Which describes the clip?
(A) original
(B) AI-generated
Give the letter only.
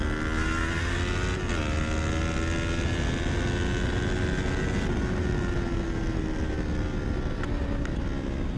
A